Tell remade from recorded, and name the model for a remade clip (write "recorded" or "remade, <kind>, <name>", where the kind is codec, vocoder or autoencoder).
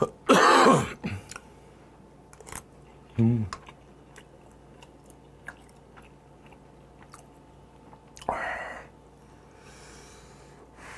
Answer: recorded